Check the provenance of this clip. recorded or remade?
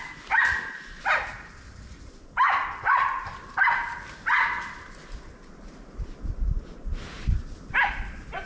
recorded